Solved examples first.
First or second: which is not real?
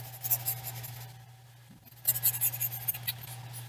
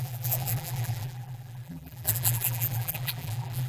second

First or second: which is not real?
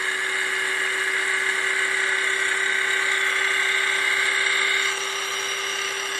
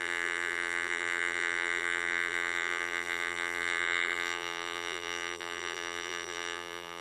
second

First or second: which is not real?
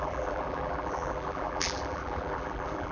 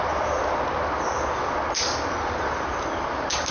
first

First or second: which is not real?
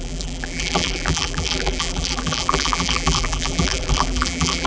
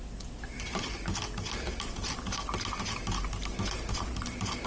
first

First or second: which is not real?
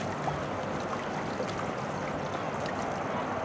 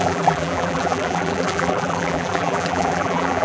second